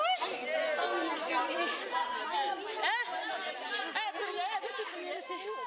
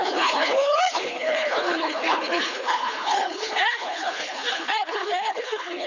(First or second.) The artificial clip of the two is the second